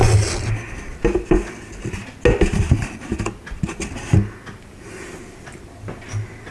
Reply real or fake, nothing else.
real